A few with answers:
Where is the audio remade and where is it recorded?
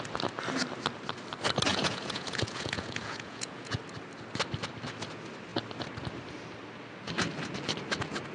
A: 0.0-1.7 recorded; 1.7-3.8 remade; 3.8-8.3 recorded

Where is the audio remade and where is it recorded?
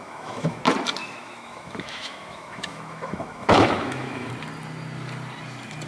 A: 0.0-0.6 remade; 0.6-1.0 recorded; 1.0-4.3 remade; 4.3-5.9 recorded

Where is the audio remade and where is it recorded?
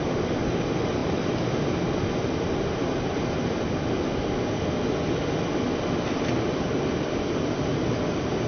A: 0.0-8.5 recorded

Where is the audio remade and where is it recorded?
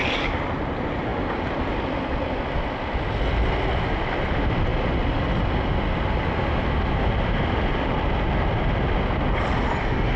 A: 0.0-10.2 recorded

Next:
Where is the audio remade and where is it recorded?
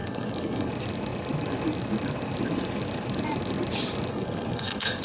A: 0.0-0.7 remade; 0.7-4.1 recorded; 4.1-5.0 remade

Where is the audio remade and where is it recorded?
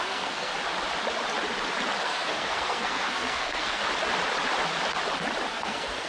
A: 0.0-0.5 remade; 0.5-2.0 recorded; 2.0-3.8 remade; 3.8-5.5 recorded; 5.5-6.1 remade